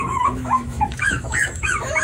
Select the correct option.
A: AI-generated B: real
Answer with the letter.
A